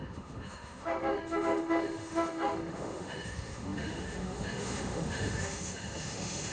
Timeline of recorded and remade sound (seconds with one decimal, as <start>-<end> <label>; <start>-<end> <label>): 0.0-6.5 remade